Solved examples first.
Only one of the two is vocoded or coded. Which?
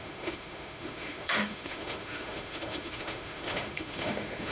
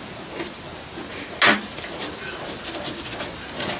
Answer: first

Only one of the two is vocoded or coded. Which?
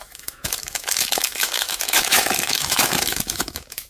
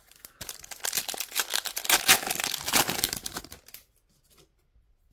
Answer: first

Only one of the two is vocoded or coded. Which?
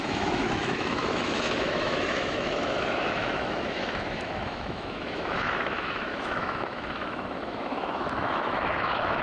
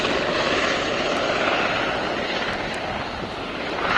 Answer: first